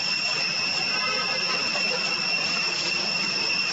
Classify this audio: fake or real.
fake